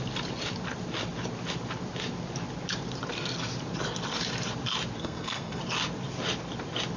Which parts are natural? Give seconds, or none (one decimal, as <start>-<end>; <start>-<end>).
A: 0.0-5.0; 5.6-7.0

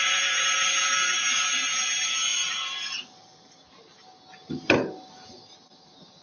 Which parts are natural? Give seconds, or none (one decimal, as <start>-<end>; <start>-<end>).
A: 0.0-6.2

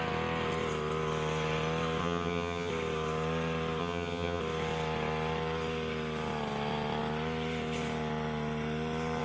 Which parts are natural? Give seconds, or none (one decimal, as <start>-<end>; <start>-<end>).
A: 0.0-2.0; 2.7-3.8; 4.4-9.2

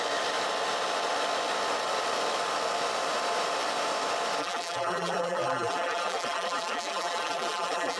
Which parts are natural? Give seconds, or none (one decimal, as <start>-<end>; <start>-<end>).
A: 0.0-4.4

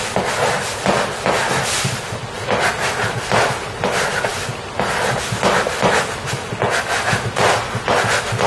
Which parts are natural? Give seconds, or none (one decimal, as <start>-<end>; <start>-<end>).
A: 0.0-8.5